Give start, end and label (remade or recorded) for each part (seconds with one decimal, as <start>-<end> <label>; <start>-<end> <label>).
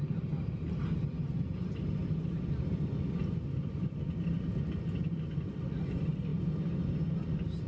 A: 0.0-0.8 remade; 0.8-7.7 recorded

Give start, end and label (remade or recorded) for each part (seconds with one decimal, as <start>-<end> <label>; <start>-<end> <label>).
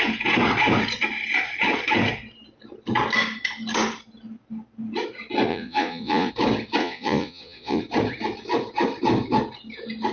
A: 0.0-5.5 recorded; 5.5-6.3 remade; 6.3-6.8 recorded; 6.8-7.8 remade; 7.8-10.1 recorded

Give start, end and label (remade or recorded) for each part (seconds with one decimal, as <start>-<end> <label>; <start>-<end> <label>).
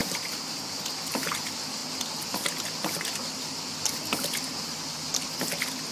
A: 0.0-0.8 remade; 0.8-5.9 recorded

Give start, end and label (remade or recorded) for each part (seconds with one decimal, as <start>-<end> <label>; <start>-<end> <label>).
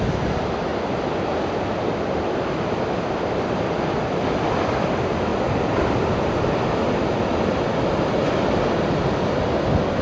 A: 0.0-10.0 recorded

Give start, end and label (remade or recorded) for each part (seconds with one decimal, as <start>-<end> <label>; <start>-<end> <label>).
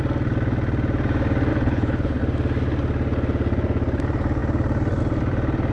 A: 0.0-1.5 recorded; 1.5-2.2 remade; 2.2-5.7 recorded